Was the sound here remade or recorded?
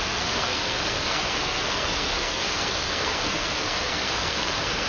remade